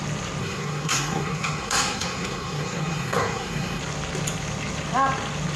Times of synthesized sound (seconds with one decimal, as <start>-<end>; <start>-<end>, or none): 0.4-3.8

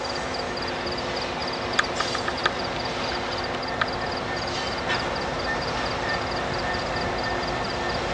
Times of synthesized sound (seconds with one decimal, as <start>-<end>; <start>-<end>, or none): none

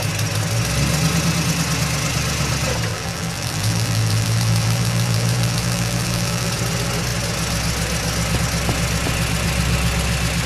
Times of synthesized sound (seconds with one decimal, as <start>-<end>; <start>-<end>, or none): 2.9-6.5

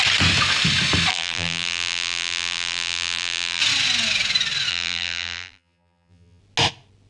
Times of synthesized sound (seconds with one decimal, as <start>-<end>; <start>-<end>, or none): 1.1-3.6; 4.7-6.4

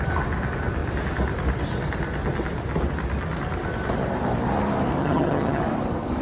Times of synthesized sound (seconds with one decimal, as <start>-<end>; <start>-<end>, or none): 5.0-5.6

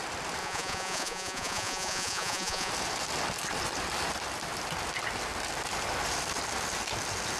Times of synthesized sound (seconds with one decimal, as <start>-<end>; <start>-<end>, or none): 0.4-2.7